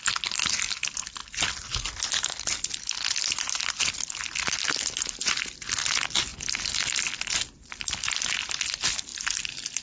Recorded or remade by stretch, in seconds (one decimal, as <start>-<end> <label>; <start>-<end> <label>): 0.0-9.8 recorded